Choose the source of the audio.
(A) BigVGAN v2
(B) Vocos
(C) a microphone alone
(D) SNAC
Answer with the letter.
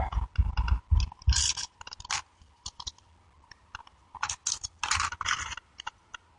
C